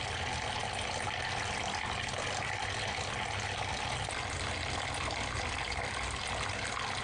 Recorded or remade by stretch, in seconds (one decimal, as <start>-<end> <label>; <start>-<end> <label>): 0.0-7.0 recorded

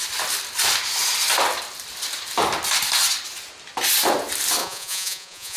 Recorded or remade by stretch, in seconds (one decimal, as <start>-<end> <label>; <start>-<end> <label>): 0.0-4.6 recorded; 4.6-5.6 remade

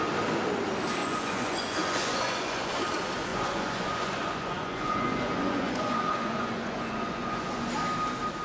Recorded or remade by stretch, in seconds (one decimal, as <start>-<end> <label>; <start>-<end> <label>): 0.0-1.0 recorded; 1.0-2.8 remade; 2.8-3.3 recorded; 3.3-7.7 remade; 7.7-8.4 recorded

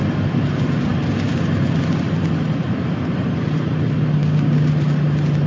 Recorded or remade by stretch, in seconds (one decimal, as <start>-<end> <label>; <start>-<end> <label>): 0.0-4.2 recorded; 4.2-4.7 remade; 4.7-5.5 recorded

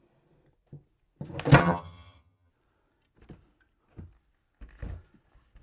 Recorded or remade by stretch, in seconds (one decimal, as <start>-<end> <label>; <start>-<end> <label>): 0.0-1.6 recorded; 1.6-2.5 remade; 2.5-5.6 recorded